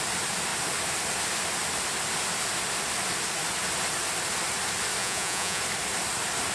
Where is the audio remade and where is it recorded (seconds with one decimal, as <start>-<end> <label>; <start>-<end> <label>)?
0.0-5.0 recorded; 5.0-5.6 remade; 5.6-6.5 recorded